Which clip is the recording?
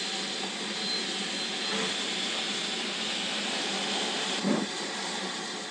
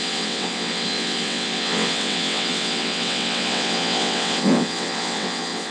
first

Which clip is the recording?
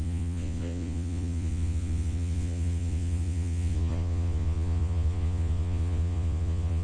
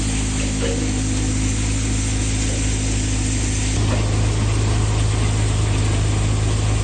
second